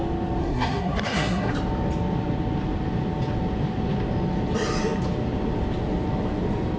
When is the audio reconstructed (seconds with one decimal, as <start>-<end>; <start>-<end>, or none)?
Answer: 0.4-1.5